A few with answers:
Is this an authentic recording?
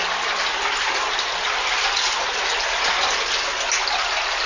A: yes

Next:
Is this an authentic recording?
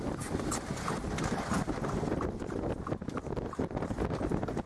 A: yes